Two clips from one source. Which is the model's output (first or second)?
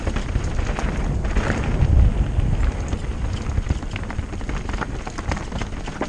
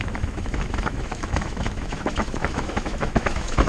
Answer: second